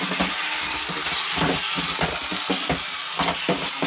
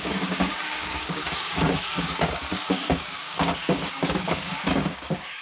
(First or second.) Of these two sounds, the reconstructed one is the second